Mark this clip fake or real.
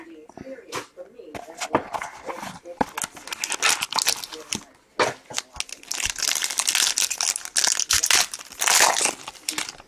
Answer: real